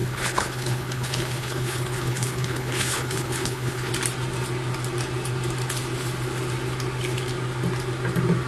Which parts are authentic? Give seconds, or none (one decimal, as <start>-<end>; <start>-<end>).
3.9-8.5